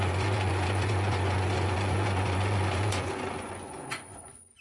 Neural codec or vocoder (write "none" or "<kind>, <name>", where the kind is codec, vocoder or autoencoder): vocoder, Vocos